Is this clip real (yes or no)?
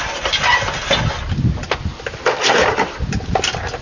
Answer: yes